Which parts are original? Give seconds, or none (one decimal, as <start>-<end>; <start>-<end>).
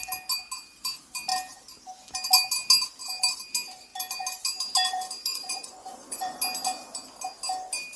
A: 0.0-5.3; 6.4-8.0